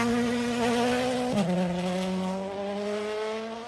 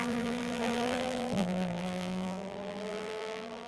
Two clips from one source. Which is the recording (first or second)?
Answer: first